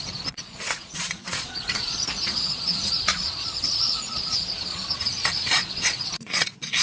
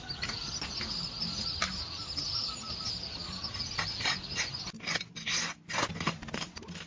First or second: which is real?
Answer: second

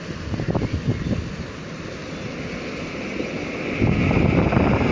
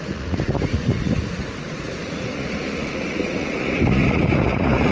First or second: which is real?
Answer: first